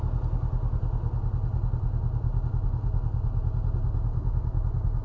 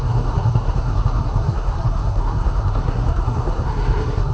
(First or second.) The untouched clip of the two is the first